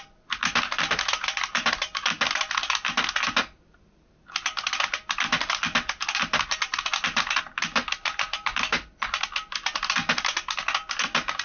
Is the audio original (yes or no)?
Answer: yes